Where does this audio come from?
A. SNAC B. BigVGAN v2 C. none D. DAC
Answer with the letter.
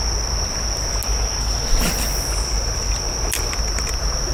C